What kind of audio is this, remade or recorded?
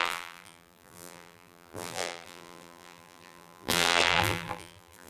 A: remade